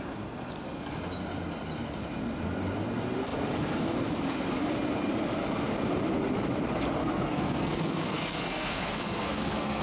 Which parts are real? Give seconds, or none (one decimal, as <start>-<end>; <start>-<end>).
0.0-7.0